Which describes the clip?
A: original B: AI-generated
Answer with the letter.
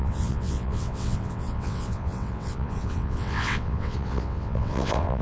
B